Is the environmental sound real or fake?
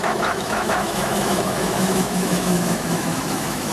fake